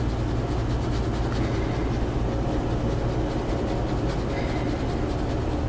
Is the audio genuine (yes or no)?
yes